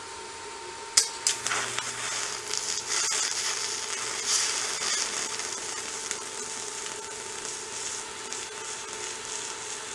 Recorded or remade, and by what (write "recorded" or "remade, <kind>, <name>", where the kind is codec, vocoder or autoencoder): recorded